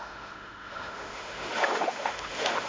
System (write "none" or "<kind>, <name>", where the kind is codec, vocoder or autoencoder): autoencoder, DAC-VAE